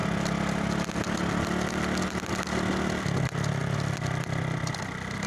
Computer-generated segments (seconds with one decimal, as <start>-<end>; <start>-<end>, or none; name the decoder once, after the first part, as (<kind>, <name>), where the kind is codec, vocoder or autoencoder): none